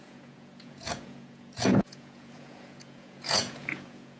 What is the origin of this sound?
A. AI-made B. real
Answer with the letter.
A